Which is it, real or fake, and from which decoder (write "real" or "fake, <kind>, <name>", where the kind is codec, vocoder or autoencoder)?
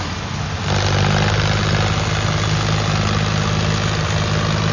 real